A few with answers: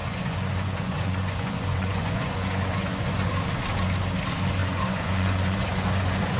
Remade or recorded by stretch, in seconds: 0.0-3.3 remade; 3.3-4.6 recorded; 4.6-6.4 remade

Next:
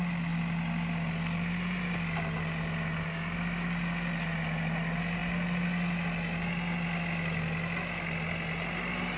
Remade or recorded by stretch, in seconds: 0.0-9.2 recorded